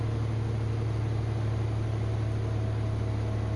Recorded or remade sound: recorded